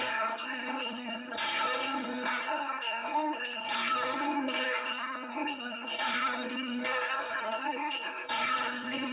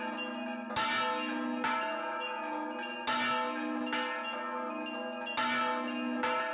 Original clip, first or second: second